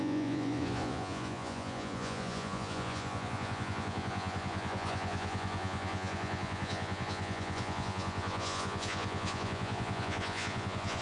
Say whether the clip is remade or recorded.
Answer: remade